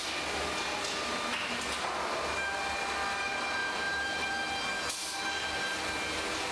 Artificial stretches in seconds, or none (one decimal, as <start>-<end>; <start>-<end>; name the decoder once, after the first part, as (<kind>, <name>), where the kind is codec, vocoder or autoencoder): 3.6-4.3 (vocoder, BigVGAN v2)